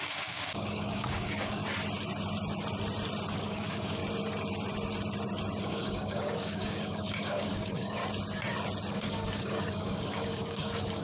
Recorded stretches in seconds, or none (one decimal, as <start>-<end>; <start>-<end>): 1.6-3.3; 4.0-5.6; 8.0-8.9